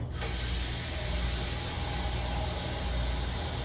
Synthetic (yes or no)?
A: no